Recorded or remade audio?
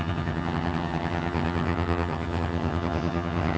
remade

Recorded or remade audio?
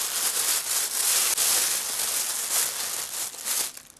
recorded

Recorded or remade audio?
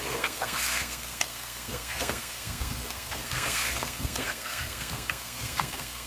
remade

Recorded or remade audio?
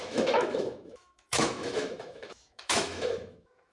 remade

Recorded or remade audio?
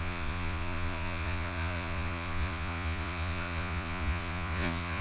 remade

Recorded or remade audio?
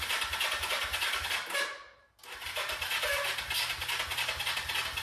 recorded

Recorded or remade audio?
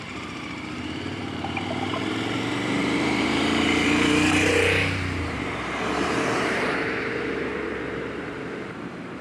remade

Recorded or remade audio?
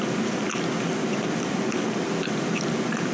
recorded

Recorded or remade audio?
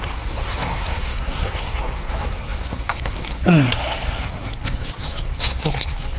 remade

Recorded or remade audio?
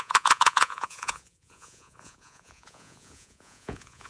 remade